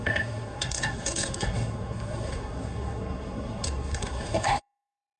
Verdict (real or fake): fake